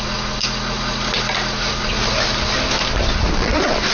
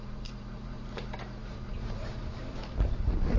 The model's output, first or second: second